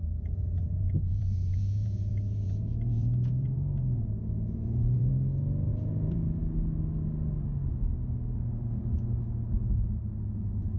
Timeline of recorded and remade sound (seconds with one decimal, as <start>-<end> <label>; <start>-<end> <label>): 0.0-5.1 remade; 5.1-5.7 recorded; 5.7-6.4 remade; 6.4-10.8 recorded